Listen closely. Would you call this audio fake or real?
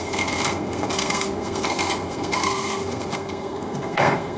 fake